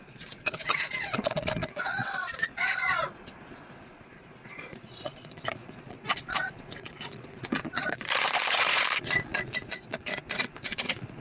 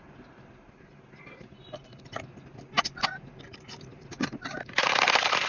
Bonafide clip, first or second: second